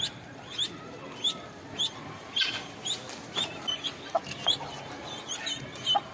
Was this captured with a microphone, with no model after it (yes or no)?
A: yes